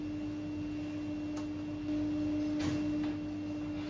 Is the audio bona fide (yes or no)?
yes